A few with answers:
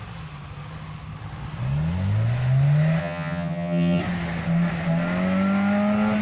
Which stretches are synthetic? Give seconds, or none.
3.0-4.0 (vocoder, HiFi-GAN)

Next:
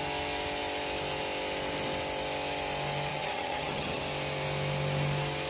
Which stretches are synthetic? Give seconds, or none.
3.1-4.0 (vocoder, HiFi-GAN)

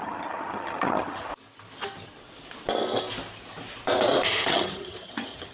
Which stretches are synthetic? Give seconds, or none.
0.0-1.3 (vocoder, HiFi-GAN); 4.5-5.5

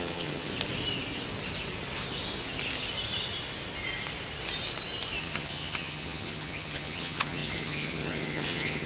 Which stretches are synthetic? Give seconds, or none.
0.0-0.5 (vocoder, HiFi-GAN); 5.2-8.9

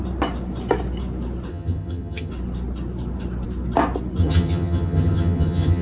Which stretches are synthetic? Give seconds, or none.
1.5-2.3 (vocoder, HiFi-GAN); 4.2-5.8